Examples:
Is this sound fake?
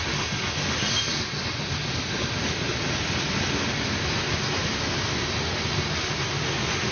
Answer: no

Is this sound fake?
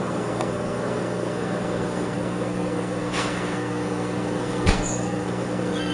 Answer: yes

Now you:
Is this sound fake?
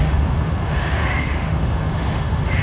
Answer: yes